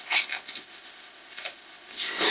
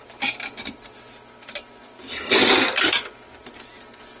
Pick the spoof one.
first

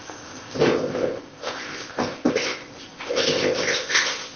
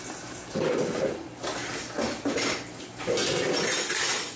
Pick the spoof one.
first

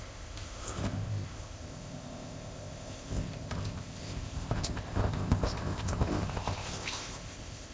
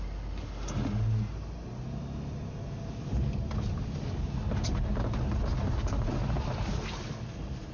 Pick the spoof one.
first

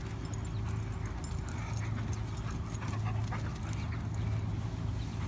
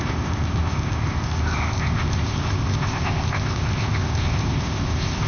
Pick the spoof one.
second